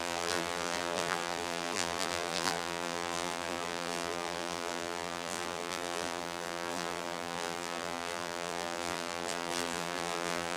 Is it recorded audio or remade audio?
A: remade